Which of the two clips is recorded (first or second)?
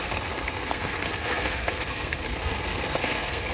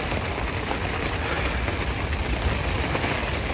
second